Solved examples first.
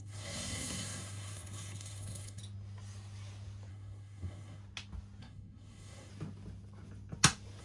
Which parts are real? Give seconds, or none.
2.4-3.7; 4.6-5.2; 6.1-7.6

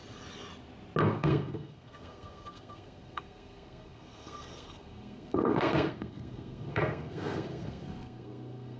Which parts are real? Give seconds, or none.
0.0-1.0

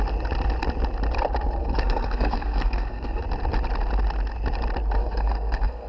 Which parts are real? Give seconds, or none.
0.0-1.6; 3.2-5.0